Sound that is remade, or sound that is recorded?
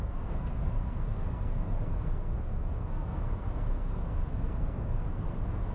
remade